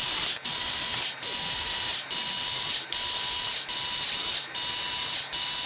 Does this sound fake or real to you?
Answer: real